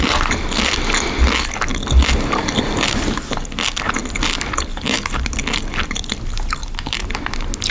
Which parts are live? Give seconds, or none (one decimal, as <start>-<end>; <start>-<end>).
0.0-4.7; 5.3-6.6; 7.1-7.7